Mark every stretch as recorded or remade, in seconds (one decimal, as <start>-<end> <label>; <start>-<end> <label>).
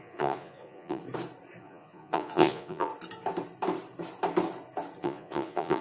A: 0.0-1.0 remade; 1.0-1.6 recorded; 1.6-2.9 remade; 2.9-5.0 recorded; 5.0-5.8 remade